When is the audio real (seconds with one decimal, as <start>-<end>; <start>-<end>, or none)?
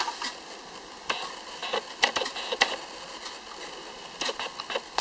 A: 0.0-5.0